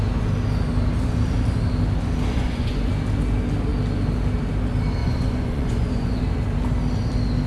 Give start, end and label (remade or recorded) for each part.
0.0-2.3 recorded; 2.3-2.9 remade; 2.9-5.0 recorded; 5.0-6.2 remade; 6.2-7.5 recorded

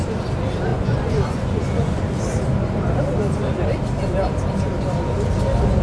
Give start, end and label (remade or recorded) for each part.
0.0-0.7 recorded; 0.7-2.0 remade; 2.0-5.8 recorded

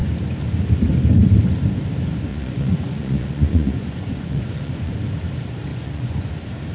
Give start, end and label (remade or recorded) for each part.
0.0-2.3 recorded; 2.3-4.9 remade; 4.9-5.7 recorded; 5.7-6.3 remade; 6.3-6.7 recorded